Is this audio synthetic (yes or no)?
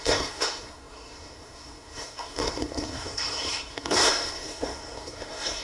yes